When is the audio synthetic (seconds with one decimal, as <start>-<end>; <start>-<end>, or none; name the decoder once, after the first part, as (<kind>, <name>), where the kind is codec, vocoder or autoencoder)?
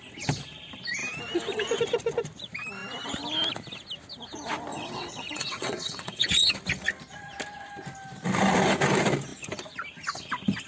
4.7-6.5 (vocoder, WaveNeXt)